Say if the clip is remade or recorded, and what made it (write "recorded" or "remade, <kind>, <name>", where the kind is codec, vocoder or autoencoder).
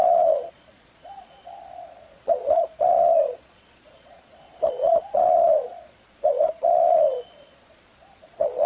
remade, vocoder, Vocos